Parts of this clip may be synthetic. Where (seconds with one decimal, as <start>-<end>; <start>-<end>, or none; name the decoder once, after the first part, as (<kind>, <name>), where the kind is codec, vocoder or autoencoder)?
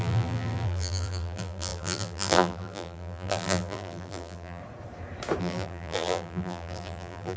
0.0-4.6 (vocoder, BigVGAN v2); 5.4-7.4